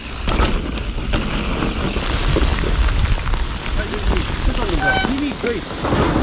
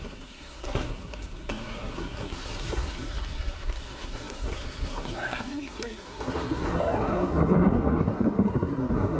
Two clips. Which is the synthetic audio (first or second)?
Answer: second